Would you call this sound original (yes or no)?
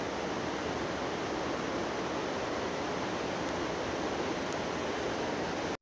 yes